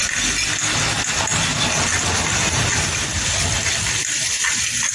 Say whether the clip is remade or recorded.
recorded